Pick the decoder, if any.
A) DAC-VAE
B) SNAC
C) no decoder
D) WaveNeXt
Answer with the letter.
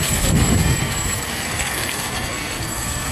B